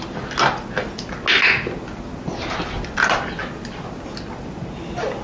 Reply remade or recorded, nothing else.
recorded